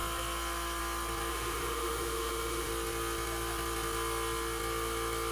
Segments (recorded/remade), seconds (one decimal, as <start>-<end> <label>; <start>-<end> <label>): 0.0-1.3 recorded; 1.3-2.7 remade; 2.7-5.3 recorded